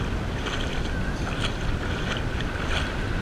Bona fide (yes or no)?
yes